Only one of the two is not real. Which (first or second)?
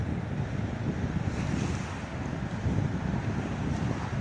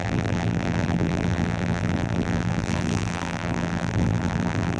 second